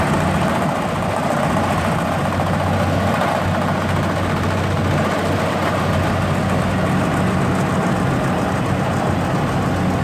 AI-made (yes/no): no